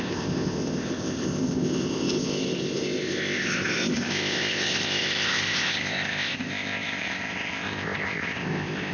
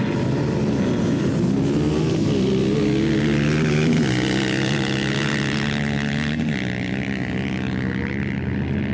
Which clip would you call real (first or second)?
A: second